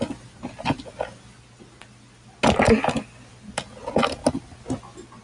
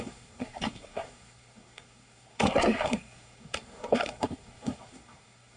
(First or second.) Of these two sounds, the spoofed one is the second